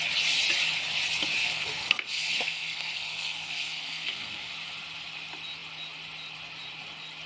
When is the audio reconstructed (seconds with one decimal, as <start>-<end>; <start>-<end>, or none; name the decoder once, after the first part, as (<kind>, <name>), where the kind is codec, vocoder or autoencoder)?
1.4-4.5 (codec, SNAC)